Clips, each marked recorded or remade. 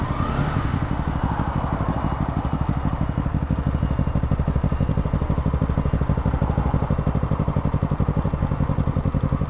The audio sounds recorded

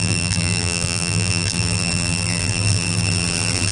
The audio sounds remade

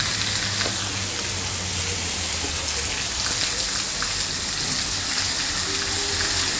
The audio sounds recorded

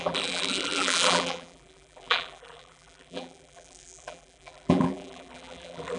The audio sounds remade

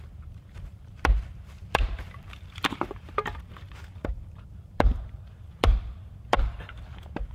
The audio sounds remade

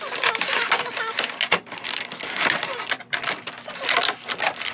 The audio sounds recorded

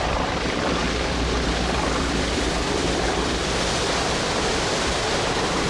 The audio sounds remade